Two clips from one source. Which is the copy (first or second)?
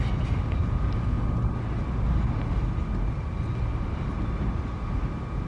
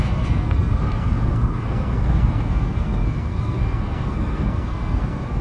second